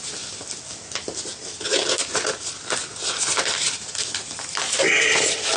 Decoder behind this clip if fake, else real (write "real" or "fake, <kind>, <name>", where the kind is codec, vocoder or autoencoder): real